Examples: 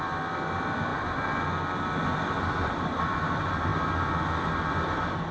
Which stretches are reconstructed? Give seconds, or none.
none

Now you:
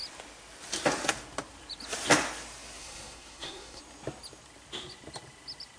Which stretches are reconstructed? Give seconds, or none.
2.8-3.8

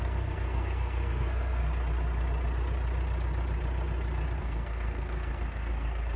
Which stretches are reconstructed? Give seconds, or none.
0.0-1.6; 4.4-6.2

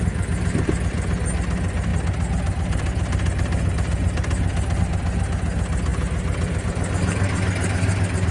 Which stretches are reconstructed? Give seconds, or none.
none

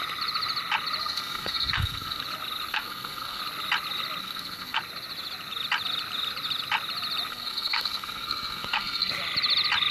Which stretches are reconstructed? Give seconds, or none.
1.0-2.2; 2.7-3.4; 4.2-4.8; 7.3-9.1

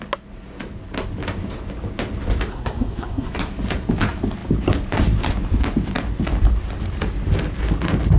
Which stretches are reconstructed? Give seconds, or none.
2.5-3.3